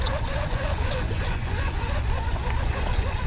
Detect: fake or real fake